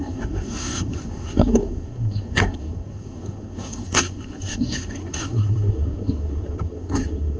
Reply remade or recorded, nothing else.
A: remade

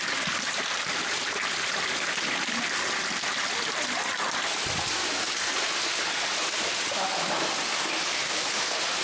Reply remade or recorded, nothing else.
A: recorded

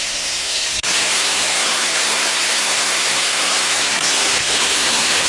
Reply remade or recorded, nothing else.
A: remade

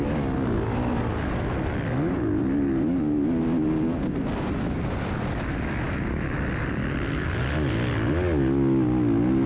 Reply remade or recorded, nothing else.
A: recorded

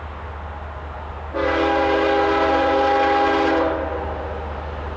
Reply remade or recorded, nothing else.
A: recorded